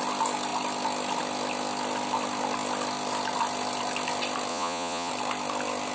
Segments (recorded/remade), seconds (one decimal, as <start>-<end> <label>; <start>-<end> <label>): 0.0-4.5 recorded; 4.5-5.1 remade; 5.1-5.9 recorded